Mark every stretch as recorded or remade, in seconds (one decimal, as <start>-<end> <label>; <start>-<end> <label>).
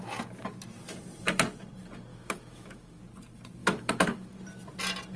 0.0-2.1 recorded; 2.1-3.0 remade; 3.0-3.6 recorded; 3.6-4.3 remade; 4.3-5.2 recorded